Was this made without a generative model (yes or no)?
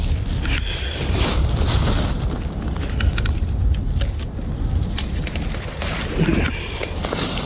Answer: yes